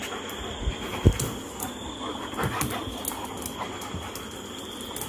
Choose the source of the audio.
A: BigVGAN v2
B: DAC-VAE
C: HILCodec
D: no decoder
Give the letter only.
D